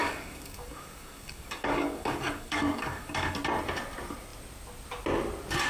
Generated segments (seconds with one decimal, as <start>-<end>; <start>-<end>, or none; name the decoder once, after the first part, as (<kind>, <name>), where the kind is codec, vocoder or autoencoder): 0.0-3.4 (codec, DAC)